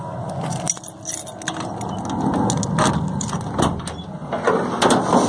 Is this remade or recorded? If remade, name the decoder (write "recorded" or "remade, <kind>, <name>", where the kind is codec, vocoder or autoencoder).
recorded